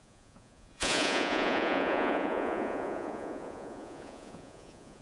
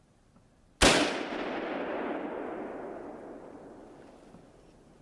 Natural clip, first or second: second